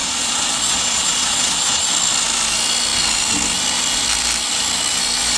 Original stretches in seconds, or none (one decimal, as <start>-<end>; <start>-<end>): 1.9-5.4